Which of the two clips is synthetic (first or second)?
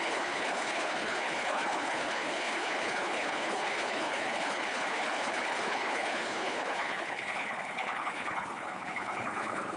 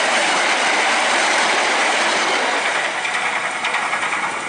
first